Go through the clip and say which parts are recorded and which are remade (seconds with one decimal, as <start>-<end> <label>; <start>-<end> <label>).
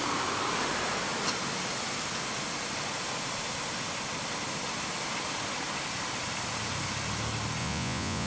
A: 0.0-7.6 recorded; 7.6-8.3 remade